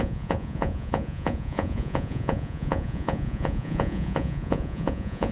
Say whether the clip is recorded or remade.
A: remade